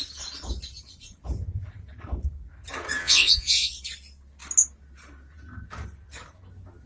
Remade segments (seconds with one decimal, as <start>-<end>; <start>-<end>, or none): 3.0-3.8